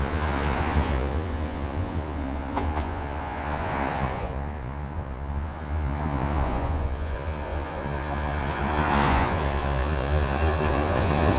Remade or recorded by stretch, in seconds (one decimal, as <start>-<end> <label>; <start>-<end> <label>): 0.0-11.4 remade